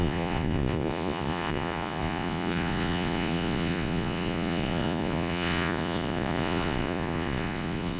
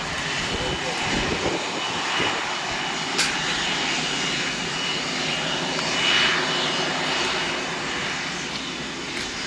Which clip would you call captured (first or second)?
second